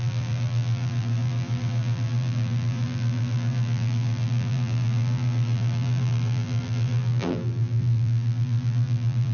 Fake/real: fake